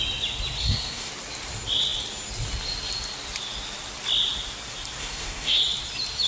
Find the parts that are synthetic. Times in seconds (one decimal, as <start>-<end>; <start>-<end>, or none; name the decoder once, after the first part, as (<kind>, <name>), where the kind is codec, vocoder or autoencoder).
0.6-1.1 (codec, SNAC); 5.0-5.6